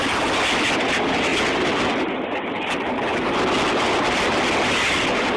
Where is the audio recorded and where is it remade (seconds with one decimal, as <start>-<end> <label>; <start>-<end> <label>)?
0.0-5.4 recorded